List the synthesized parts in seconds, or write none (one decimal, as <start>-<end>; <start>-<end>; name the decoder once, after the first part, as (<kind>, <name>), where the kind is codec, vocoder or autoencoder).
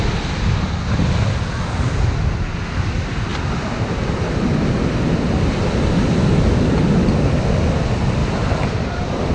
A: 8.2-9.3 (vocoder, BigVGAN v2)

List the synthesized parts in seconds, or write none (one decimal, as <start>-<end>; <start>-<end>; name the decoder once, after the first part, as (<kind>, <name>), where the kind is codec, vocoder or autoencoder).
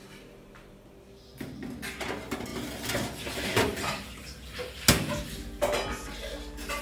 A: 3.7-4.5 (vocoder, BigVGAN v2)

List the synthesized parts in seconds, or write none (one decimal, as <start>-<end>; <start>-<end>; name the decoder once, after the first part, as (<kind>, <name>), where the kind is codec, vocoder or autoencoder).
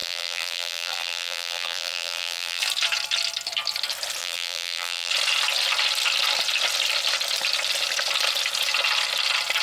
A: 0.0-2.6 (vocoder, BigVGAN v2); 4.2-5.1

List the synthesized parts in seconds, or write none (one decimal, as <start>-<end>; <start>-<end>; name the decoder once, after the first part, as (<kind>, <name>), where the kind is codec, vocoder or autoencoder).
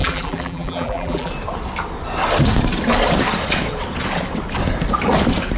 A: 0.0-1.3 (vocoder, BigVGAN v2)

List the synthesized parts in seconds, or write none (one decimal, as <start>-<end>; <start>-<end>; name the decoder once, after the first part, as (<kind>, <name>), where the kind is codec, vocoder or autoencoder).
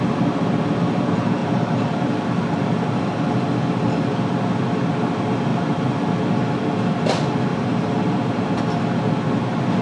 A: 1.4-3.2 (vocoder, BigVGAN v2); 5.5-6.1; 7.5-8.6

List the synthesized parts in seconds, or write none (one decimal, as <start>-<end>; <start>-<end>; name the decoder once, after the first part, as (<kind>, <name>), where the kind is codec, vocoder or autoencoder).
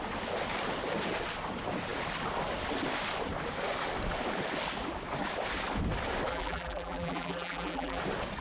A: 6.3-8.0 (vocoder, BigVGAN v2)